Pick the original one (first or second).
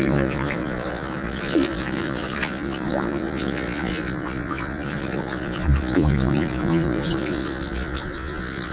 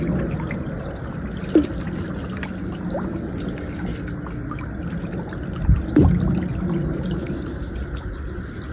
second